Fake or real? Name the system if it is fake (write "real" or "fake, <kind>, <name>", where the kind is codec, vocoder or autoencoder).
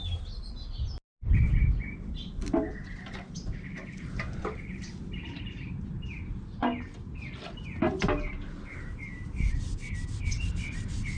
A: real